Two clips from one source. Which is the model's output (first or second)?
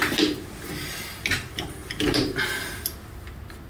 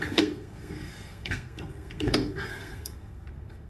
second